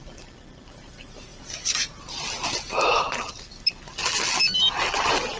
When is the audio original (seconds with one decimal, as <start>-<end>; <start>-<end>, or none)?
0.0-5.4